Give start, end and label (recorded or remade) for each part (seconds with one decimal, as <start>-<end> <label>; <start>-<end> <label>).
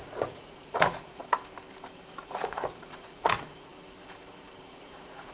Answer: 0.0-1.2 remade; 1.2-2.2 recorded; 2.2-3.7 remade; 3.7-4.7 recorded; 4.7-5.3 remade